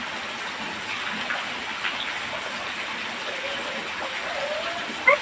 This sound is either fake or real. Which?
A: real